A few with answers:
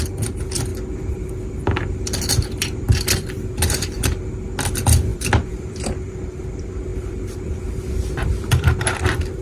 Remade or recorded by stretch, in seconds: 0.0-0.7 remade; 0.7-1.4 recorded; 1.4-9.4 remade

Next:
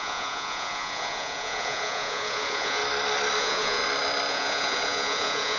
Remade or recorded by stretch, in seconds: 0.0-2.8 remade; 2.8-3.4 recorded; 3.4-3.8 remade; 3.8-4.3 recorded; 4.3-5.6 remade

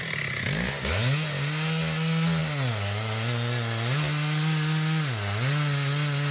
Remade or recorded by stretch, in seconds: 0.0-6.3 recorded

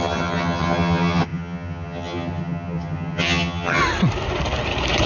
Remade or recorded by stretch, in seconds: 0.0-3.8 remade; 3.8-5.1 recorded

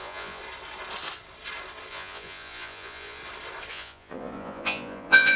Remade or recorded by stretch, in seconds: 0.0-0.4 remade; 0.4-1.9 recorded; 1.9-3.2 remade; 3.2-3.7 recorded; 3.7-5.4 remade

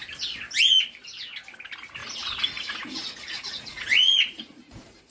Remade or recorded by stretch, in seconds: 0.0-2.0 recorded; 2.0-5.1 remade